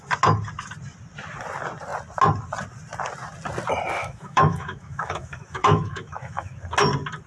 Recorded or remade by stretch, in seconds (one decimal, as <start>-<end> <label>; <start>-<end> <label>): 0.0-4.0 recorded; 4.0-6.6 remade; 6.6-7.3 recorded

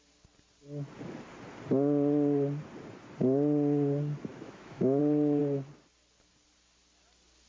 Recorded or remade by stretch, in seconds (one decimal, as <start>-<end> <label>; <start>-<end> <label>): 0.0-4.3 recorded; 4.3-5.0 remade; 5.0-7.5 recorded

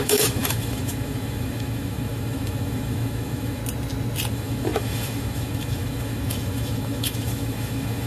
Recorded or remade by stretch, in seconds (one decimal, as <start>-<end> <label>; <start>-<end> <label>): 0.0-3.6 remade; 3.6-4.3 recorded; 4.3-8.1 remade

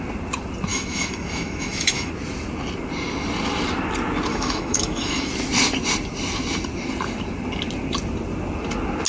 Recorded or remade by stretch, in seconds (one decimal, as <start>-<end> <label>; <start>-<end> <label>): 0.0-0.7 recorded; 0.7-2.1 remade; 2.1-4.3 recorded; 4.3-5.3 remade; 5.3-9.1 recorded

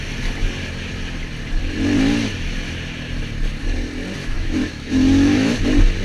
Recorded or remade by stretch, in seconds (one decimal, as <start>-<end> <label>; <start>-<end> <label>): 0.0-4.2 recorded; 4.2-5.6 remade; 5.6-6.0 recorded